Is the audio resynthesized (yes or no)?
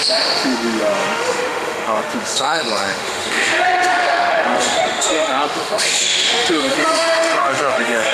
yes